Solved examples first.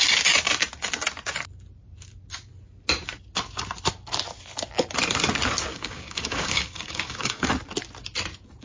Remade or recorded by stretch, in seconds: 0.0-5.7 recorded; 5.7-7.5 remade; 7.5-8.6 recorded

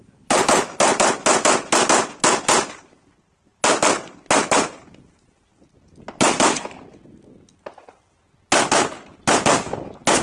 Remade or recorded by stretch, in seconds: 0.0-10.2 recorded